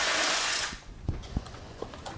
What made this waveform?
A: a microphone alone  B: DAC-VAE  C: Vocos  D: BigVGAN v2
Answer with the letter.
C